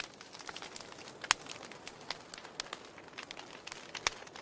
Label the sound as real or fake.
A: real